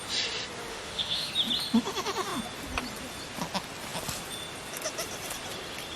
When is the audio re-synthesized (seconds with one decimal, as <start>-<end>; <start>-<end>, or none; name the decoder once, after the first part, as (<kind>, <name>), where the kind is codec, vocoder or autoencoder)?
0.7-1.3 (autoencoder, DAC-VAE)